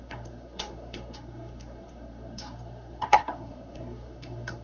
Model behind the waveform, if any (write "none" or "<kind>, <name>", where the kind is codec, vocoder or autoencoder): codec, SNAC